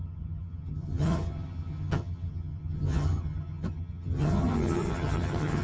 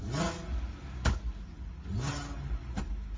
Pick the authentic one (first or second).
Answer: second